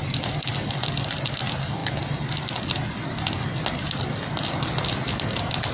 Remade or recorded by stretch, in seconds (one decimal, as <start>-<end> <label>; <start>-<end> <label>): 0.0-5.7 recorded